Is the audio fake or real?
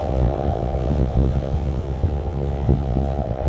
fake